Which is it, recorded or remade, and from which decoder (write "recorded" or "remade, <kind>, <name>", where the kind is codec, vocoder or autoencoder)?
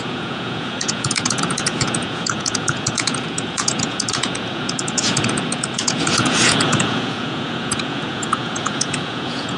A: remade, vocoder, Vocos